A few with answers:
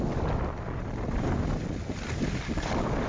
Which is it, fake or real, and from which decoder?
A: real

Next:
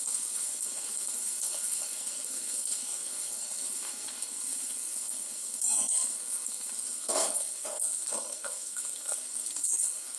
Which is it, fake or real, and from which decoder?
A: fake, codec, SNAC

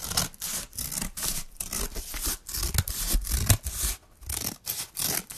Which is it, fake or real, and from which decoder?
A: real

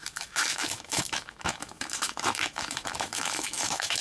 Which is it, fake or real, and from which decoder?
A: fake, autoencoder, DAC-VAE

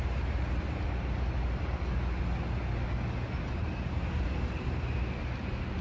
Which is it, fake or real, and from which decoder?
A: real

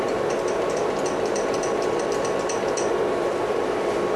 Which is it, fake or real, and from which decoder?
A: real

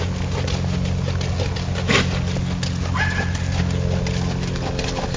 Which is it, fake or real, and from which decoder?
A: real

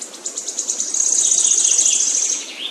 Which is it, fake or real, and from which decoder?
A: real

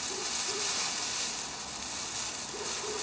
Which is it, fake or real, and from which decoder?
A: real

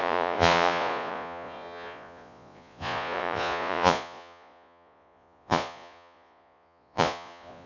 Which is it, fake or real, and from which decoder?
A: fake, vocoder, Vocos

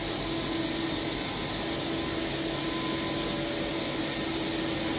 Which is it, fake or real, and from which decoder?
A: real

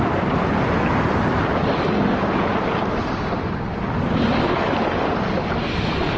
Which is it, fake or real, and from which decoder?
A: real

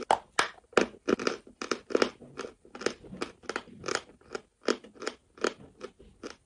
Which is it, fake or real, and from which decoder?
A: real